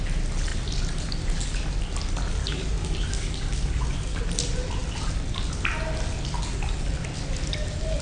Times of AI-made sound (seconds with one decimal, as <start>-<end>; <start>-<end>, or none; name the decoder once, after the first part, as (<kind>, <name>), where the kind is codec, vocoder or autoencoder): 2.4-4.2 (codec, DAC)